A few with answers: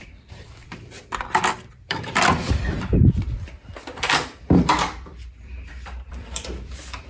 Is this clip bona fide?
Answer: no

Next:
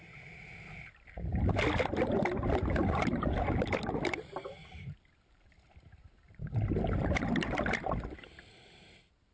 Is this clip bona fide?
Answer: yes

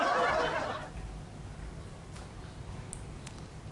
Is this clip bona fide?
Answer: yes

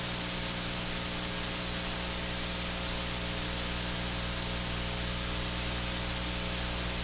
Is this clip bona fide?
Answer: yes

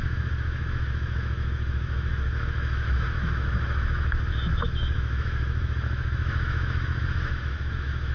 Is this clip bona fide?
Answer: no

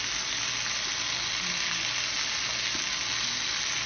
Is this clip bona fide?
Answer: yes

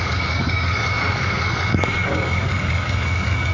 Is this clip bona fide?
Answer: no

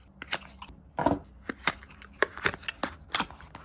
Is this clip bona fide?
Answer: yes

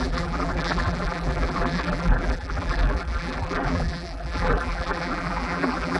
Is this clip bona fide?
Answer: no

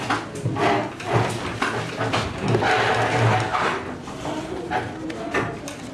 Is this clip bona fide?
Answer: yes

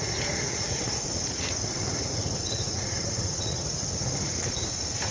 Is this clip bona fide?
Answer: no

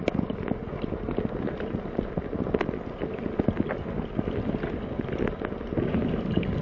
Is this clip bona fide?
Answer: yes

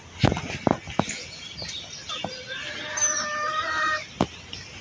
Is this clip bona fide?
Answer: yes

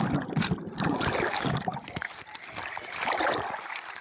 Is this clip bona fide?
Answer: yes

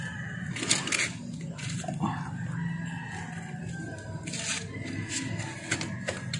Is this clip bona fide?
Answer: yes